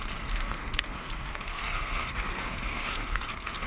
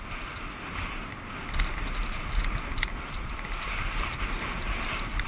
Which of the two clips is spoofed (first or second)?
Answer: first